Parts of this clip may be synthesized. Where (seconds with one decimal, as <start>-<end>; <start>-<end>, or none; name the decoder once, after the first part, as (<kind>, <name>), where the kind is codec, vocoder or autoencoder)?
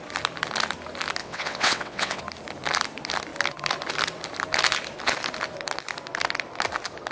1.2-2.2 (vocoder, WaveNeXt)